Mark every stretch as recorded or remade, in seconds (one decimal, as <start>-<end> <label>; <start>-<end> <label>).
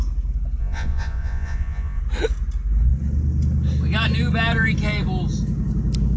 0.0-0.6 recorded; 0.6-2.0 remade; 2.0-6.2 recorded